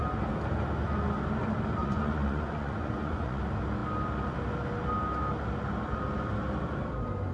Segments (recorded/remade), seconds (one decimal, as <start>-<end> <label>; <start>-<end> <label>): 0.0-1.8 recorded; 1.8-3.4 remade; 3.4-7.3 recorded